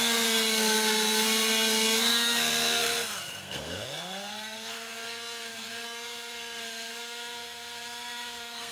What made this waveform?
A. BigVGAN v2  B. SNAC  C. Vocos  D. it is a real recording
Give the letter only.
B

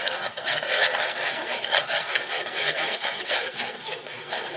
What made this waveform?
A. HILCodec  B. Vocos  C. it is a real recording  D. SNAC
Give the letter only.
D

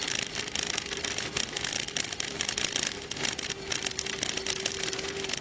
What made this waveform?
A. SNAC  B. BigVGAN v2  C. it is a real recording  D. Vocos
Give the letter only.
C